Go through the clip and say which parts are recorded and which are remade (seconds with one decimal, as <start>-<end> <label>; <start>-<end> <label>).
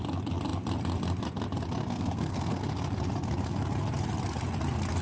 0.0-1.8 recorded; 1.8-2.6 remade; 2.6-5.0 recorded